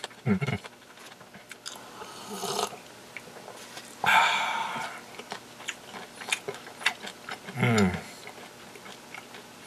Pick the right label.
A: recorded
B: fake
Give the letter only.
A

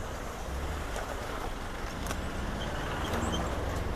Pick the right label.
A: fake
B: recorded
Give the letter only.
B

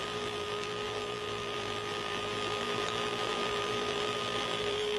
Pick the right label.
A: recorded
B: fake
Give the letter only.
B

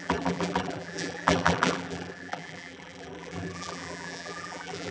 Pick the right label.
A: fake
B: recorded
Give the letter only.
A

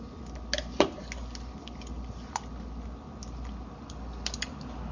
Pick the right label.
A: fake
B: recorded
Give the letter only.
B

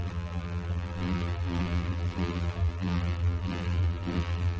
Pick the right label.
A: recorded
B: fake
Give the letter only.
B